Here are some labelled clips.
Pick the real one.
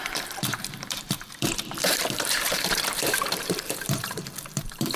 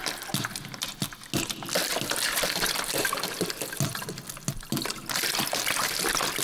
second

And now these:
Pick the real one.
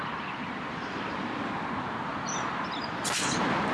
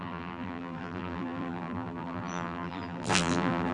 first